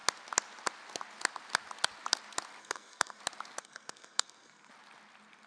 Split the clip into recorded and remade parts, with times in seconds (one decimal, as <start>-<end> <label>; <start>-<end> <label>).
0.0-2.6 recorded; 2.6-3.2 remade; 3.2-3.6 recorded; 3.6-4.7 remade; 4.7-5.5 recorded